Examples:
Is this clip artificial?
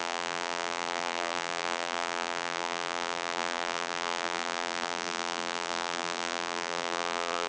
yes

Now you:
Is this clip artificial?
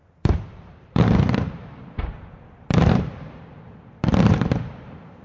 yes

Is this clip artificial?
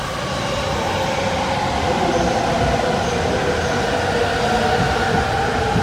no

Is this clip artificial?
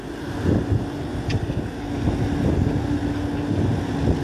no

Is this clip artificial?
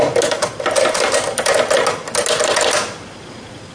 no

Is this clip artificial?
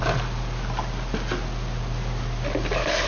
no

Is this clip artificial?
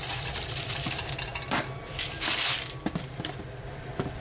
yes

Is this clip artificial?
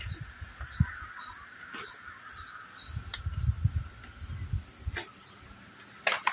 no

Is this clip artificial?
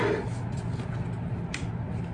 no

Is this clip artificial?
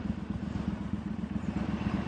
yes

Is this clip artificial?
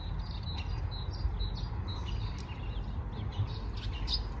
no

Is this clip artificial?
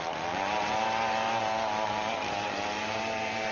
yes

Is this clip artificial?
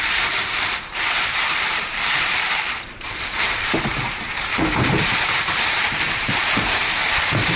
yes